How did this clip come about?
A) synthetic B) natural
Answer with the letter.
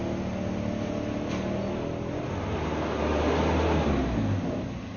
B